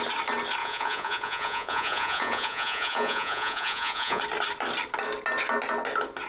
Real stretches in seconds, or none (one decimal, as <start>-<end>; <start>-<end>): 0.0-0.6; 4.2-6.3